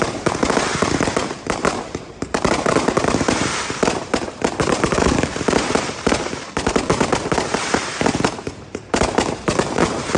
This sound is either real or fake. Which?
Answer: fake